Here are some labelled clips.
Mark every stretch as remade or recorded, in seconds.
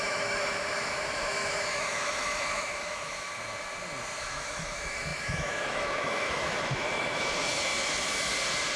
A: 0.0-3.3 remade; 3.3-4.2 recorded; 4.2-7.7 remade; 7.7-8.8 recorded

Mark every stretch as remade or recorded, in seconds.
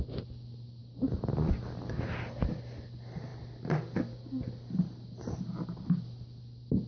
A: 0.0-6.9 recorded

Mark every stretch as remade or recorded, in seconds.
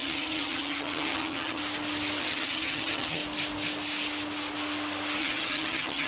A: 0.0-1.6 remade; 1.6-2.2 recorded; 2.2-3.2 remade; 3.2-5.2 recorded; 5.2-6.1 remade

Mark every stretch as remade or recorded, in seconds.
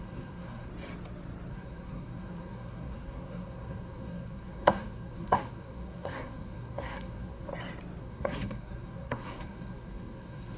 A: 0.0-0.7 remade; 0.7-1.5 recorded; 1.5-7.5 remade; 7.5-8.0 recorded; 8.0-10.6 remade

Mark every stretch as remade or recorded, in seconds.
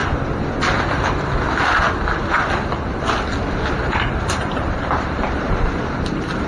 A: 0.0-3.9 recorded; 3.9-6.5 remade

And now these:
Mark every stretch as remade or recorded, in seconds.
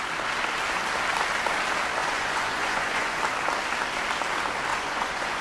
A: 0.0-2.0 recorded; 2.0-3.2 remade; 3.2-4.7 recorded; 4.7-5.4 remade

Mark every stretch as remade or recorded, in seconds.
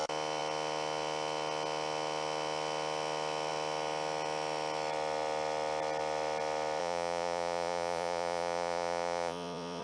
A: 0.0-6.8 recorded; 6.8-9.8 remade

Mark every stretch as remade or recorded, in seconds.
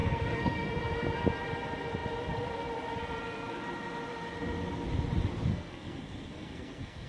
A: 0.0-0.8 remade; 0.8-5.5 recorded; 5.5-7.1 remade